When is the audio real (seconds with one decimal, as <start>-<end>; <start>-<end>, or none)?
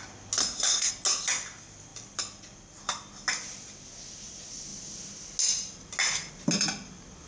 0.0-0.4; 0.9-7.3